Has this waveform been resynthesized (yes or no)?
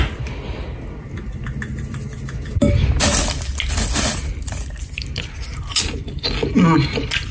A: no